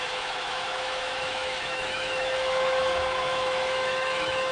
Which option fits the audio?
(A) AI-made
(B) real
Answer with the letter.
A